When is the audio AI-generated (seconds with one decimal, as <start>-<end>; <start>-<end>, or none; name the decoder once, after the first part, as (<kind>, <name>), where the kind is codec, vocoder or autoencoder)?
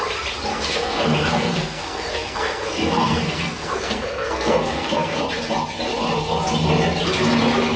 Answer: 0.5-5.2 (codec, SNAC)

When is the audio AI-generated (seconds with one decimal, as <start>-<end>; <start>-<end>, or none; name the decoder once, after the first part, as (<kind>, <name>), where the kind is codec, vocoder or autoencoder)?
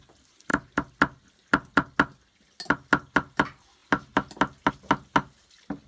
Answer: none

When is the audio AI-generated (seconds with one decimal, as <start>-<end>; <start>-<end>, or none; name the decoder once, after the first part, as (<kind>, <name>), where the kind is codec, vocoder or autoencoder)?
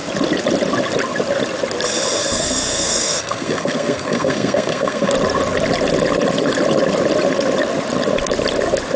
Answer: 2.2-5.1 (codec, SNAC)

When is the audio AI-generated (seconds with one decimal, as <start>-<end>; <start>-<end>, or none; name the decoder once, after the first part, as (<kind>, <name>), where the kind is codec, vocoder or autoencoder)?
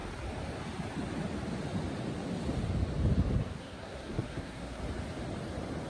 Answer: 3.5-4.8 (codec, SNAC)